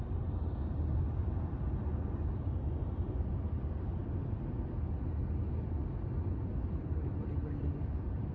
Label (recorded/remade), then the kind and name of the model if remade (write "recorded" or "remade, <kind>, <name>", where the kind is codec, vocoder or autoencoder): recorded